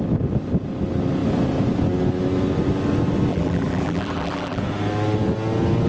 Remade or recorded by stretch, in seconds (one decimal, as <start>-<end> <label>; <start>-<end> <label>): 0.0-3.3 recorded; 3.3-4.6 remade; 4.6-5.9 recorded

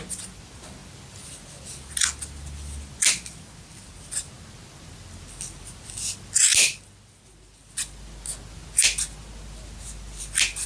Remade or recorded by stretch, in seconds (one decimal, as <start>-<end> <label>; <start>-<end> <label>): 0.0-10.7 recorded

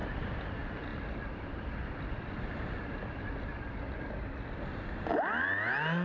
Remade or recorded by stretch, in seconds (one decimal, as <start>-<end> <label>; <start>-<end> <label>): 0.0-0.5 remade; 0.5-6.0 recorded

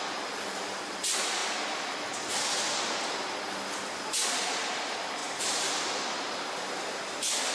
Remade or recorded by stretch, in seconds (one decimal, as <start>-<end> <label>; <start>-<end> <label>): 0.0-1.4 remade; 1.4-3.7 recorded; 3.7-7.5 remade

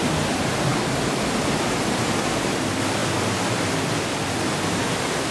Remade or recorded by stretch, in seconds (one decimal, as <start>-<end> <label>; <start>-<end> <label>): 0.0-0.7 remade; 0.7-1.4 recorded; 1.4-3.0 remade; 3.0-4.2 recorded; 4.2-5.3 remade